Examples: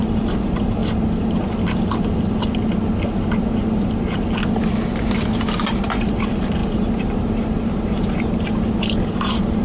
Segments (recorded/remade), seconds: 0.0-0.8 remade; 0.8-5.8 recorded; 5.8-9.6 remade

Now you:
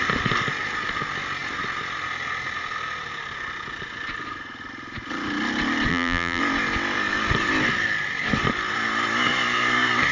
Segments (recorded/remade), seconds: 0.0-5.9 recorded; 5.9-6.4 remade; 6.4-10.1 recorded

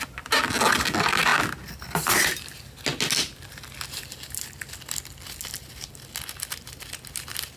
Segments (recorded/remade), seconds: 0.0-7.6 recorded

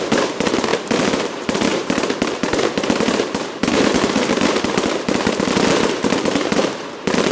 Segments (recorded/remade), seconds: 0.0-7.3 remade

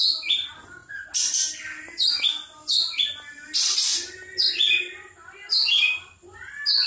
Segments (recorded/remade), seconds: 0.0-6.9 recorded

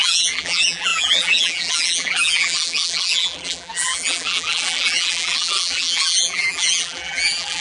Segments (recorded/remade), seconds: 0.0-7.6 remade

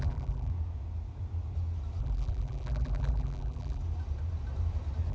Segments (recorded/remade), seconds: 0.0-0.5 remade; 0.5-2.0 recorded; 2.0-3.8 remade; 3.8-5.1 recorded